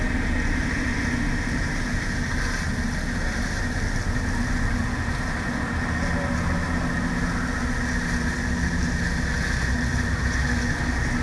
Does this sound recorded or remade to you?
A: recorded